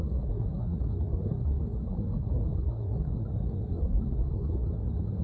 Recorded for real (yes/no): no